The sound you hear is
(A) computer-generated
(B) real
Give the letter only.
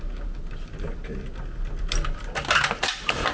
B